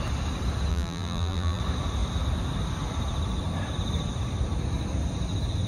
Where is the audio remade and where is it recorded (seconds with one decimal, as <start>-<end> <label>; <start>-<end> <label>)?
0.0-0.7 recorded; 0.7-1.6 remade; 1.6-5.7 recorded